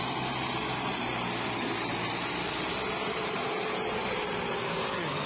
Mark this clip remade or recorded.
recorded